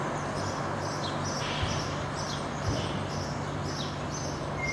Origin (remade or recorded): recorded